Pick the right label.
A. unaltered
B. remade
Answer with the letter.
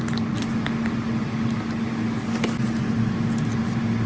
A